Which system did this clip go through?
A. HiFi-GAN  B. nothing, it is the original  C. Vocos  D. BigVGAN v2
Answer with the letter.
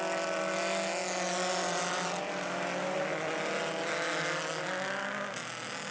B